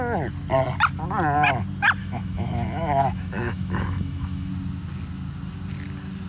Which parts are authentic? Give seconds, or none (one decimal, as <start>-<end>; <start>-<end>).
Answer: 0.0-2.0; 4.5-6.3